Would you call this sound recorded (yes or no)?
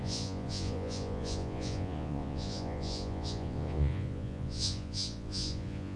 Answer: no